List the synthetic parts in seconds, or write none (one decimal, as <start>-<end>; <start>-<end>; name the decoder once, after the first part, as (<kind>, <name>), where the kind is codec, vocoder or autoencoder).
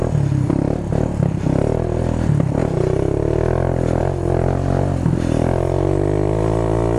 none